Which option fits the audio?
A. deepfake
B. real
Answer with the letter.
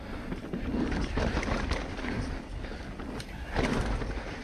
B